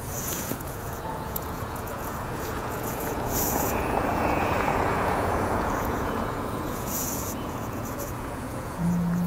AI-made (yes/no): yes